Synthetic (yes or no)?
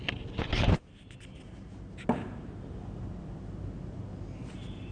no